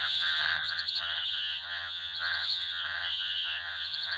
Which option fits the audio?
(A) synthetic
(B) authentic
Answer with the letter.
A